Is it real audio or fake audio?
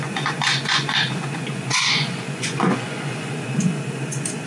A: fake